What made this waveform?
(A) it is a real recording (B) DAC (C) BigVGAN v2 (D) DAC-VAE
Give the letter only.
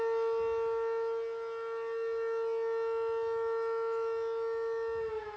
A